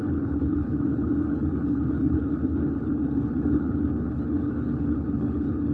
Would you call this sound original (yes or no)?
no